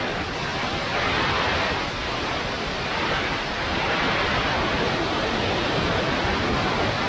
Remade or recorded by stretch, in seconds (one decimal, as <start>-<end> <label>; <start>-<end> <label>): 0.0-7.1 recorded